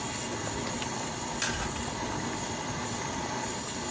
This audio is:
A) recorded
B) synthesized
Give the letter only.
A